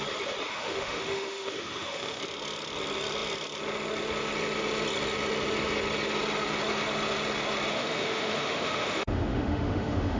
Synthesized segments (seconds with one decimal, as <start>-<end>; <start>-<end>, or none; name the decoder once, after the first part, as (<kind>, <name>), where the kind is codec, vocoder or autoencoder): 0.5-2.2 (autoencoder, DAC-VAE); 7.7-10.2

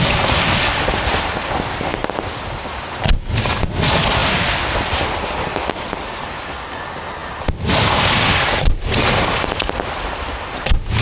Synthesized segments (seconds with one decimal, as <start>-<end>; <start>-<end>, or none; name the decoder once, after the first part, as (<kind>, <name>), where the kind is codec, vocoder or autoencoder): none

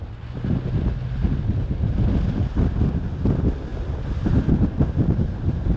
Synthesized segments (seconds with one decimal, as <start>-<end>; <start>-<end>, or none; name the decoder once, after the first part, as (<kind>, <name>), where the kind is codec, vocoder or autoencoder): none

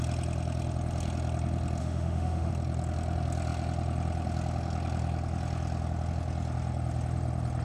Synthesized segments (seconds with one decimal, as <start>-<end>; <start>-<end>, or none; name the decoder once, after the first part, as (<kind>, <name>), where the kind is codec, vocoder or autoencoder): 1.8-2.5 (autoencoder, DAC-VAE)

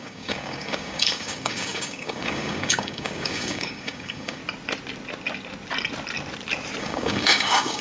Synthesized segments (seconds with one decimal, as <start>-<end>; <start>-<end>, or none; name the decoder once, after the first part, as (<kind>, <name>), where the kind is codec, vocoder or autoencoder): 0.0-4.4 (codec, DAC); 6.8-7.8

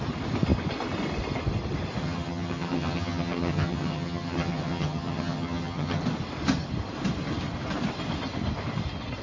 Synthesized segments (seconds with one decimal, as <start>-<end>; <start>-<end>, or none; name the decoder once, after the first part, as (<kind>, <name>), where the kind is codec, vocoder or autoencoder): 2.0-6.0 (vocoder, HiFi-GAN)